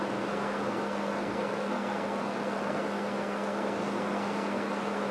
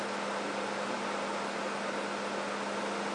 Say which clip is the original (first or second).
second